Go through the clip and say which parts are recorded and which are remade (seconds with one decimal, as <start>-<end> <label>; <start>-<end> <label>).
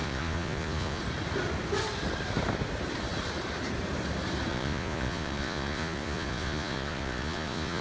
0.0-1.0 remade; 1.0-4.5 recorded; 4.5-7.8 remade